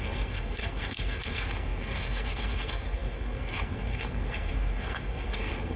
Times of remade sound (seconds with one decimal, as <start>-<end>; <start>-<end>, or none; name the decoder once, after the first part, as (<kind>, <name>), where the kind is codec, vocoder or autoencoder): 0.0-5.8 (codec, SNAC)